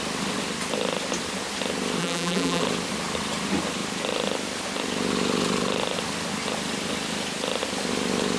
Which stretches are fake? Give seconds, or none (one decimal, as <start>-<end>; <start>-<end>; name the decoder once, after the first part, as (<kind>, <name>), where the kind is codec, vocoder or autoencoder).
2.0-2.6 (vocoder, BigVGAN v2)